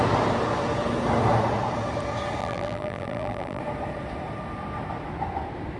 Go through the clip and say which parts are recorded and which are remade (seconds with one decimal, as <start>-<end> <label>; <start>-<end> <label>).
0.0-2.4 recorded; 2.4-3.6 remade; 3.6-5.8 recorded